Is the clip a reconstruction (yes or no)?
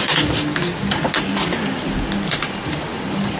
no